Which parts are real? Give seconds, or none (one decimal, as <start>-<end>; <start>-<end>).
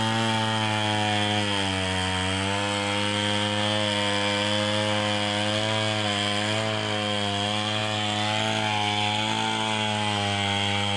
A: 0.0-11.0